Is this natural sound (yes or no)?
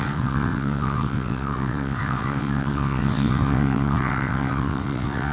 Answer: no